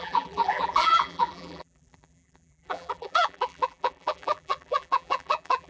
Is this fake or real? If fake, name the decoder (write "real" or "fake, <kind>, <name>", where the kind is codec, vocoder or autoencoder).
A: fake, vocoder, BigVGAN v2